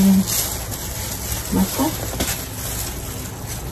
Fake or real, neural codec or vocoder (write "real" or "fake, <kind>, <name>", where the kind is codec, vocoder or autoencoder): real